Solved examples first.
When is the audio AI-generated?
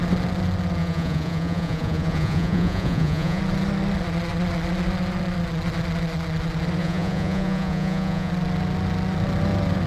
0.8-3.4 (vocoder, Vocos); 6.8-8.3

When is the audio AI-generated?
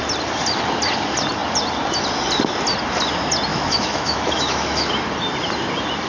3.5-4.9 (autoencoder, DAC-VAE)